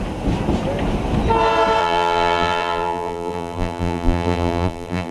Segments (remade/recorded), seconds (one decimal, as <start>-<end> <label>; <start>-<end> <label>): 0.0-1.8 recorded; 1.8-5.1 remade